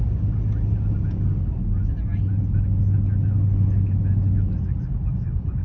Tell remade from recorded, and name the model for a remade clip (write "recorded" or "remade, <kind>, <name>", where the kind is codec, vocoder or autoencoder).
recorded